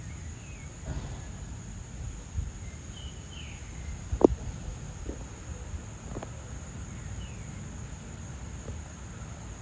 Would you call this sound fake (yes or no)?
no